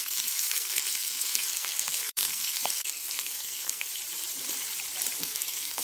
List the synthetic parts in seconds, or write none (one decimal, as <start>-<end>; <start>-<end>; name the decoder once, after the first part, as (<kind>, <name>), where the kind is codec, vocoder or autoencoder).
0.0-3.9 (codec, SNAC); 5.2-5.8